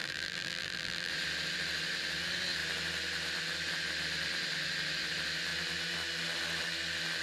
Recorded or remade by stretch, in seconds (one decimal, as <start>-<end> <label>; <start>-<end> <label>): 0.0-1.1 remade; 1.1-7.2 recorded